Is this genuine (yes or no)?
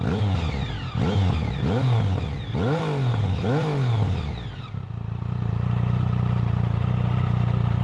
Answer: yes